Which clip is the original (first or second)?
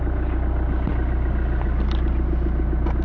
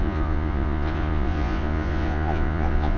first